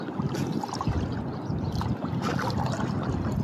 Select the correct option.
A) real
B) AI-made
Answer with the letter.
A